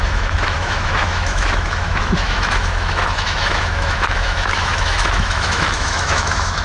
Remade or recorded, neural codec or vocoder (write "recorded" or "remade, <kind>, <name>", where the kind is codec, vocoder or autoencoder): remade, autoencoder, DAC-VAE